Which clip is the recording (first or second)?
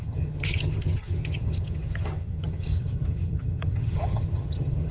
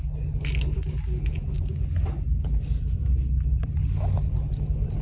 second